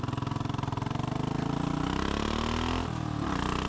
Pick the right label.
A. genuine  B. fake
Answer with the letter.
A